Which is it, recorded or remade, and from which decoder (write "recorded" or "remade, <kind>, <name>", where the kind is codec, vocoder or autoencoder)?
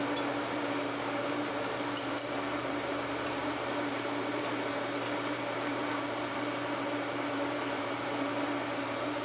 remade, vocoder, BigVGAN v2